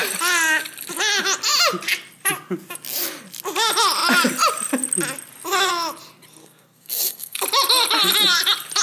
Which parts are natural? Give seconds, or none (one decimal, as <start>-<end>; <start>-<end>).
0.0-6.4; 7.4-8.8